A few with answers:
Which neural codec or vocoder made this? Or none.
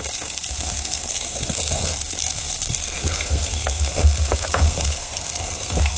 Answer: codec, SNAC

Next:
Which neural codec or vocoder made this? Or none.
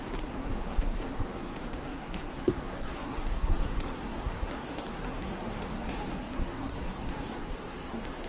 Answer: codec, SNAC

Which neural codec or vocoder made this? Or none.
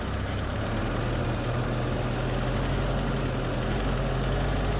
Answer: none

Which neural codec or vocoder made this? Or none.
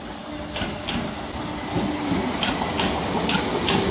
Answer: none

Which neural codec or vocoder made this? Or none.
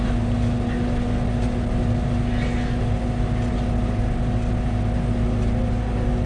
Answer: none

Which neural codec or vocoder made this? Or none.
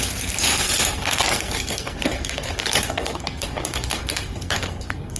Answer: codec, SNAC